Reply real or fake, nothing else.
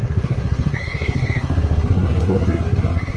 fake